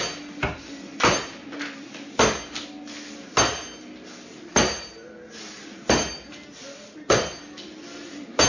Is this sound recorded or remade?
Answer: recorded